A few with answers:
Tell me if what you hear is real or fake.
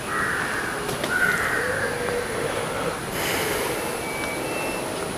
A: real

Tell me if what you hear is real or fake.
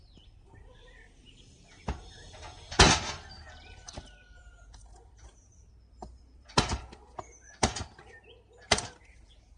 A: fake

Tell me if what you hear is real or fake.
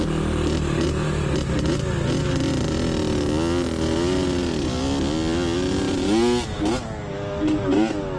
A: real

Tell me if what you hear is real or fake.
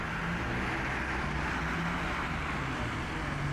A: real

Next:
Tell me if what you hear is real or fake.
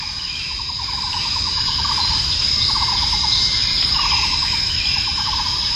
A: fake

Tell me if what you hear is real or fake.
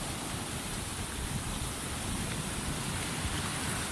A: fake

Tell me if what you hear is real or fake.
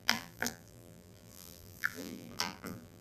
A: fake